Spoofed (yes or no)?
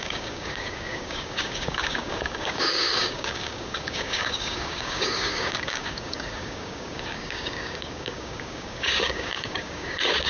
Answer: yes